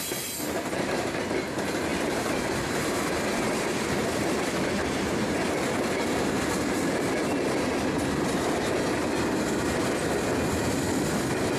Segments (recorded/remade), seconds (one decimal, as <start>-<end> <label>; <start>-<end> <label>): 0.0-1.9 recorded; 1.9-6.3 remade; 6.3-11.6 recorded

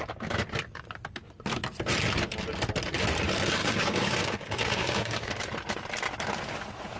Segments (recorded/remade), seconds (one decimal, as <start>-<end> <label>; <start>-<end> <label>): 0.0-3.6 recorded; 3.6-5.3 remade; 5.3-7.0 recorded